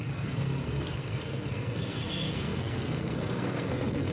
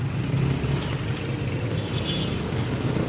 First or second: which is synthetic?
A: first